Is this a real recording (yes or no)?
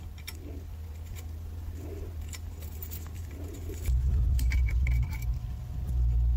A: yes